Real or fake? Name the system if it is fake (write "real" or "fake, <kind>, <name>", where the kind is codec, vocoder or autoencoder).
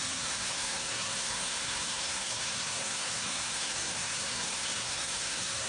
fake, codec, SNAC